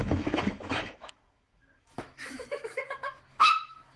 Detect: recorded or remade remade